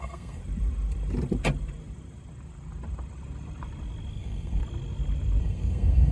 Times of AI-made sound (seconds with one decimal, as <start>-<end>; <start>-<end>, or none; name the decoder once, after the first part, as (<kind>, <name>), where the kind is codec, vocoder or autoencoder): 0.0-0.4 (codec, SNAC); 4.1-4.6; 5.4-6.1